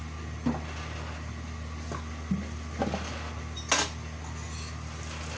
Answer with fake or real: real